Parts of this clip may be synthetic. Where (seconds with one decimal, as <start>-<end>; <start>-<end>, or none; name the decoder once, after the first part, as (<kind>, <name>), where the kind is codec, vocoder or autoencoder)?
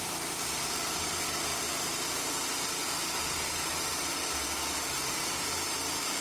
1.5-5.2 (vocoder, BigVGAN v2)